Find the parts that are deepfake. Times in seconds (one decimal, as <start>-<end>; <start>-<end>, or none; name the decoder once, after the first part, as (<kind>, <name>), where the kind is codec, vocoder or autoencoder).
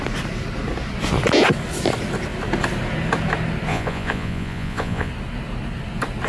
3.7-5.1 (vocoder, Vocos)